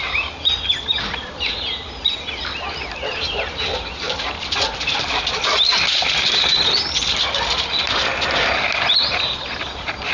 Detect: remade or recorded recorded